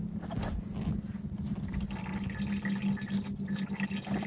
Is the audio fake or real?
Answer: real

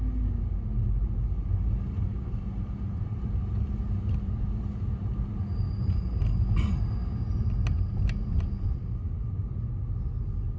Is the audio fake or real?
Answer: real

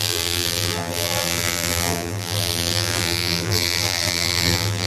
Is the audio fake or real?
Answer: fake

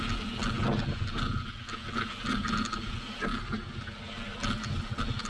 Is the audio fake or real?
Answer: real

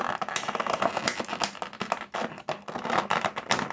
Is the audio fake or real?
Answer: real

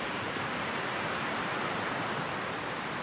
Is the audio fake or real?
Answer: fake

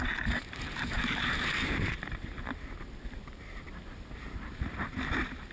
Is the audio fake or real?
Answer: fake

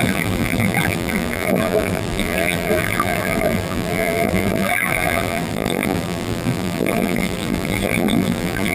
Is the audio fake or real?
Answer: fake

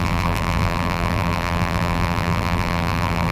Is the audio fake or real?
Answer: fake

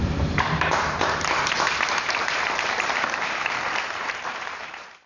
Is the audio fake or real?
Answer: fake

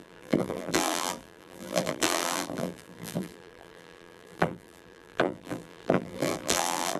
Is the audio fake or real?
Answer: fake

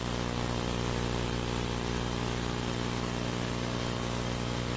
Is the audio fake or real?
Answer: fake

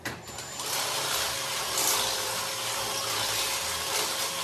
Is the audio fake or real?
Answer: real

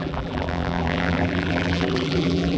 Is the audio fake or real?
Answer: fake